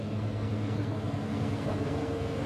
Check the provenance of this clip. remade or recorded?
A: remade